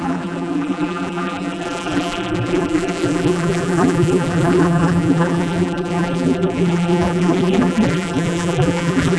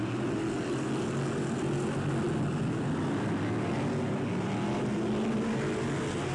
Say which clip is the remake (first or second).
first